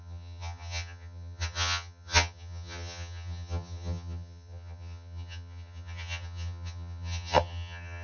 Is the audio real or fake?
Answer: fake